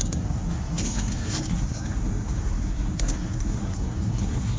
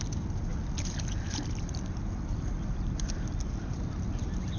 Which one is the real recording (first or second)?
second